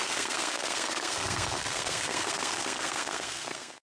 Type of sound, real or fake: fake